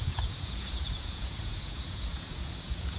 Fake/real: fake